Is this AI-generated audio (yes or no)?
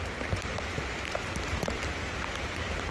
yes